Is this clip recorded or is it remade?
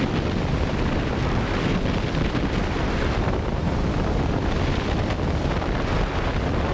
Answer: remade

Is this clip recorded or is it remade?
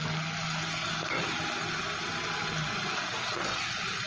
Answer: recorded